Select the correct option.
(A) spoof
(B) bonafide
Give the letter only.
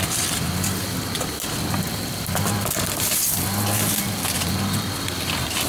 B